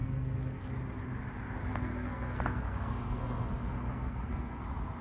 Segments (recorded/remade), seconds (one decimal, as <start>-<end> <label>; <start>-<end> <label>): 0.0-0.6 remade; 0.6-1.6 recorded; 1.6-4.6 remade; 4.6-5.0 recorded